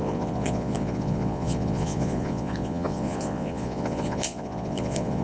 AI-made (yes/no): yes